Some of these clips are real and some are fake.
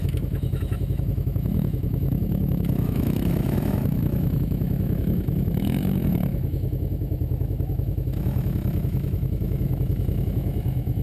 fake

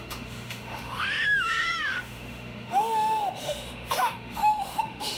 fake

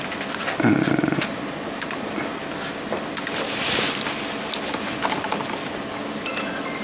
real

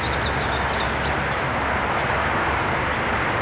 real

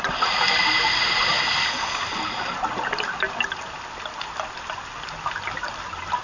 real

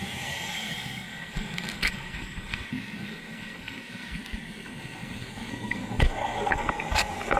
fake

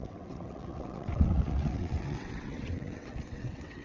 fake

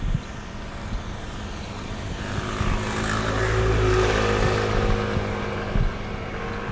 real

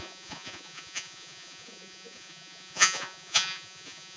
fake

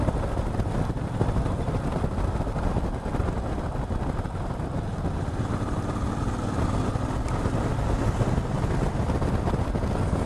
real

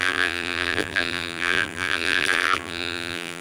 fake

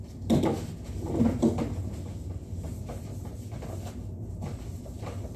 real